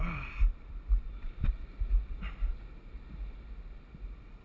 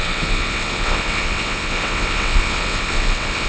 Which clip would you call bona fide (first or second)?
first